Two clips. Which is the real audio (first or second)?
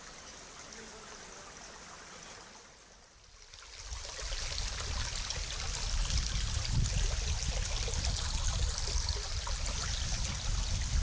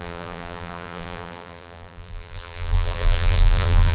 first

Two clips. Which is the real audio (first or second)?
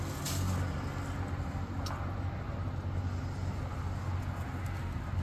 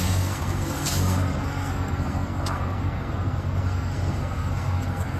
first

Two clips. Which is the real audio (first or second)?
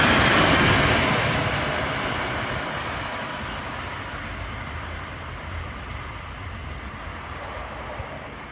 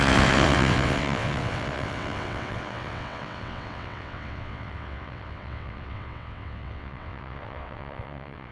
first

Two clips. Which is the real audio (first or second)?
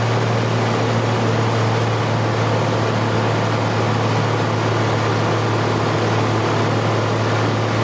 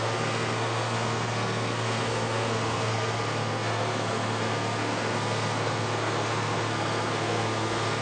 first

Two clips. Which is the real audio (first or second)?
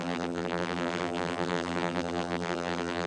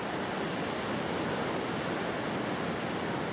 second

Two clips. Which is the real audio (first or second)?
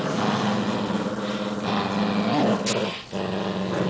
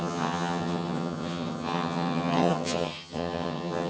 first